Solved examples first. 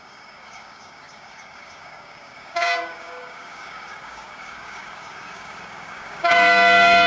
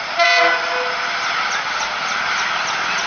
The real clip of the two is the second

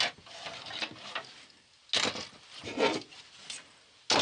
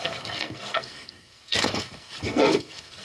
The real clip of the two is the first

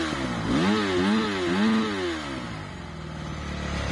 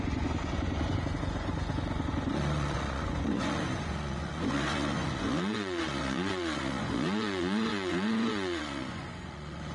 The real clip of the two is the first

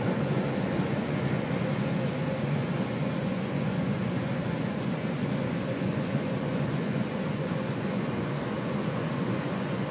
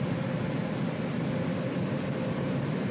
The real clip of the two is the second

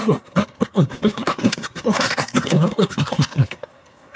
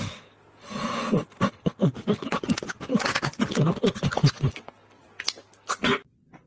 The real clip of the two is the second